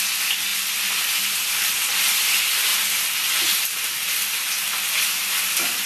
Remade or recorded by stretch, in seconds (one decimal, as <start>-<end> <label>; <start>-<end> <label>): 0.0-5.9 recorded